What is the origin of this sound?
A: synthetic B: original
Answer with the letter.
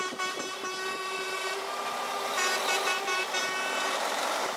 A